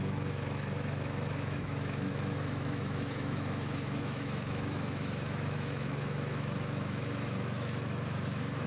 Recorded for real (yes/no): no